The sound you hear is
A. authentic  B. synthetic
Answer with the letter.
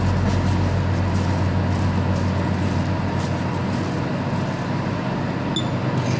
A